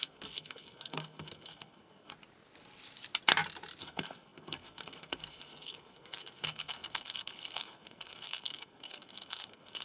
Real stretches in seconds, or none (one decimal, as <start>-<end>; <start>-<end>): 2.1-3.8